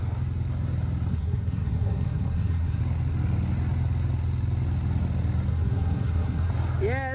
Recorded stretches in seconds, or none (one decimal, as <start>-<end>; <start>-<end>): 0.0-1.1; 2.8-5.5; 6.5-7.1